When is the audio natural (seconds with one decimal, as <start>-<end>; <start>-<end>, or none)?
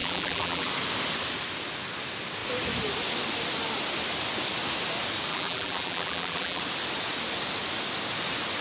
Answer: 0.7-5.3; 6.6-8.6